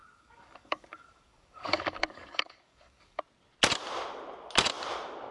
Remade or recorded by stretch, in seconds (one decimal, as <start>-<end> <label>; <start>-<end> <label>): 0.0-3.2 remade; 3.2-5.3 recorded